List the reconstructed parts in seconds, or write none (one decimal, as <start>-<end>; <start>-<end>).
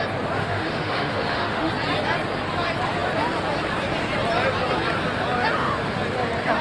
0.4-1.7